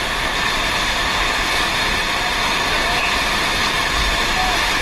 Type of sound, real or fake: real